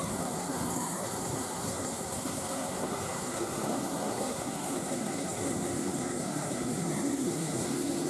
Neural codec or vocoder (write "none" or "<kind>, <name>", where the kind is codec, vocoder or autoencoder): codec, SNAC